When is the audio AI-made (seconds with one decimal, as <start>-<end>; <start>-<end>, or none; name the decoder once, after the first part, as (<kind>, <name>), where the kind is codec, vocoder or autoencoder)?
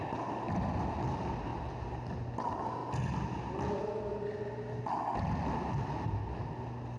none